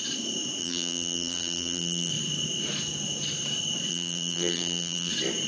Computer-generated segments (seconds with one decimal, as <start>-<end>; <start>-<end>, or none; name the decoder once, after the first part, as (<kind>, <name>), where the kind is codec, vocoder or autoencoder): 0.6-2.1 (vocoder, BigVGAN v2); 3.9-5.1